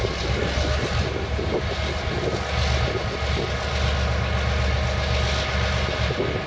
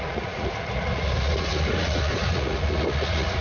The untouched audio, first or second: first